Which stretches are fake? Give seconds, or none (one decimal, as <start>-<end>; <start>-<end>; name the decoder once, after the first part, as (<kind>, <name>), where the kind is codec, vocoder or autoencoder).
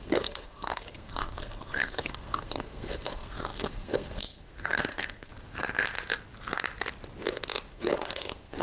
0.0-5.3 (codec, SNAC); 7.7-8.6